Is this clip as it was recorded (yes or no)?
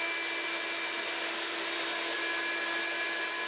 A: yes